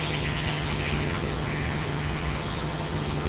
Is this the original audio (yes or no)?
no